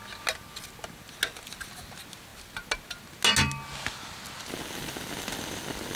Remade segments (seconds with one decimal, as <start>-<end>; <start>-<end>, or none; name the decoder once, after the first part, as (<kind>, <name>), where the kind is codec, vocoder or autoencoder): none